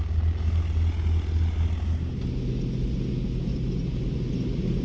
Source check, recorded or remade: recorded